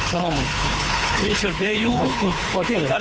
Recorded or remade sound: remade